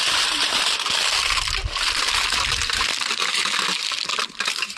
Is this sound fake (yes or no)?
no